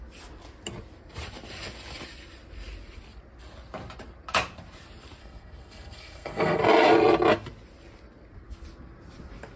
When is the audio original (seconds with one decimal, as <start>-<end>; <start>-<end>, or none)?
0.0-5.2; 6.6-9.6